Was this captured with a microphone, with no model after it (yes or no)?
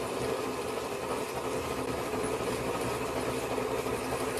yes